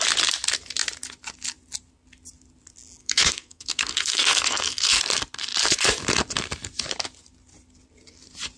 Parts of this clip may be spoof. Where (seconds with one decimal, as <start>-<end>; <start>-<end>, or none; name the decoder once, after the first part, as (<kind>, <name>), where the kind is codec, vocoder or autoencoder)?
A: 3.0-5.0 (codec, SNAC)